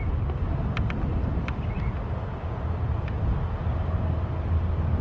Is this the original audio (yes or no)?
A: yes